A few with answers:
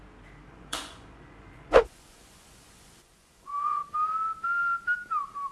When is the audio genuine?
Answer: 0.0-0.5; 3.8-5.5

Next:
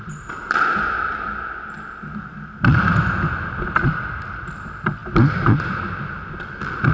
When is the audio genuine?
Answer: 0.0-6.9

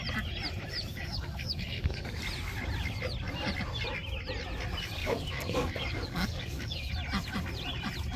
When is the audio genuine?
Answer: 0.0-0.9; 2.2-5.0; 6.9-8.2

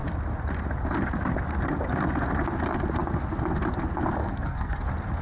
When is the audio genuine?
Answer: 0.0-4.2; 4.8-5.2

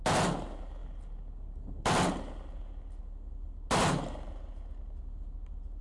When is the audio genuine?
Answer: 0.0-5.8

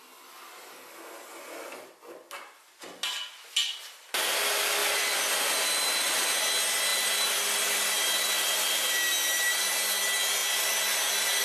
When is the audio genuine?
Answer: 0.0-3.1; 4.1-4.8; 6.1-6.9; 8.9-10.4

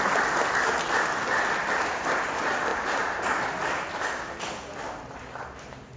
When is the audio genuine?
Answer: 0.0-6.0